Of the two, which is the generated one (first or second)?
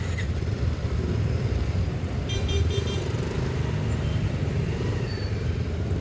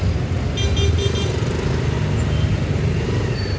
first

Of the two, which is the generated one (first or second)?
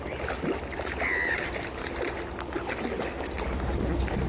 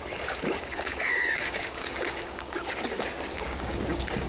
second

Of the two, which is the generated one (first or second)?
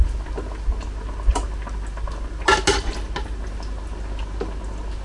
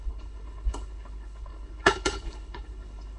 second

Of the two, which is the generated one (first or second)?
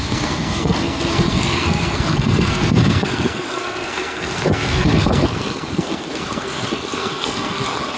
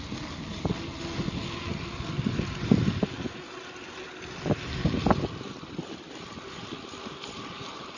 first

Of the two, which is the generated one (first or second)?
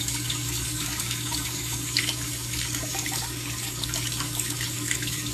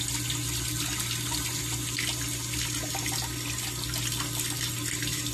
first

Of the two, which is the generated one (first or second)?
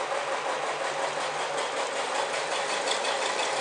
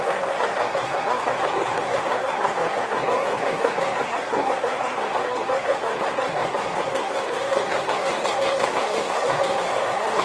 second